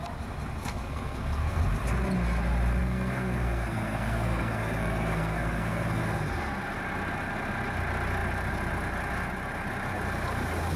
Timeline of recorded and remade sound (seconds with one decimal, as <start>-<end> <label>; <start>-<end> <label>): 0.0-0.6 recorded; 0.6-1.6 remade; 1.6-2.8 recorded; 2.8-6.0 remade; 6.0-10.8 recorded